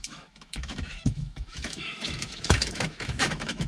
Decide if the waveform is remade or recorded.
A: remade